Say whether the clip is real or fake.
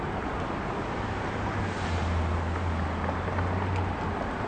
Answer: real